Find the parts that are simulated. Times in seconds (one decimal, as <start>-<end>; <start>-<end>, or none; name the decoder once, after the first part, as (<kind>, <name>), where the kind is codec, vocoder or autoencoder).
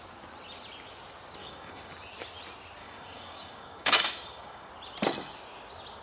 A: 1.4-1.9 (codec, DAC); 2.8-4.7